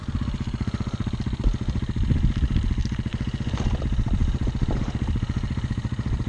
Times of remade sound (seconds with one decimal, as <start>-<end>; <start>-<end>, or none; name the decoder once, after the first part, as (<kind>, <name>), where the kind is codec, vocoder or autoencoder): none